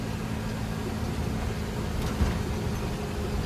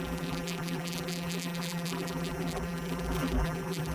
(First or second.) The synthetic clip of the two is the second